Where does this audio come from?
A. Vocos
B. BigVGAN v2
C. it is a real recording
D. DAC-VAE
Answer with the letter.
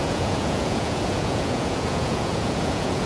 A